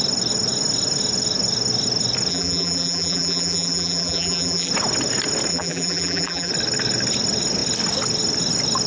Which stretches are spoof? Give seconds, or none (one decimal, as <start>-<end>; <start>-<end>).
2.3-4.7; 5.5-6.5